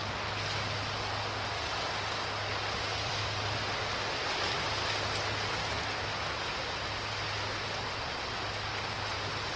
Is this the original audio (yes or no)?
yes